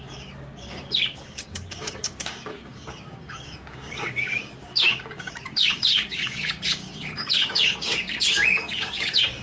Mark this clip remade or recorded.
remade